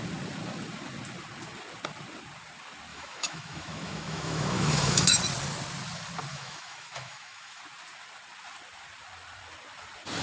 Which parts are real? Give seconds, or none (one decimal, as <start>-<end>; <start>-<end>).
0.0-2.9; 5.2-6.3; 7.6-10.2